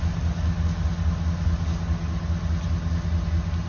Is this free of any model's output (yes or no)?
yes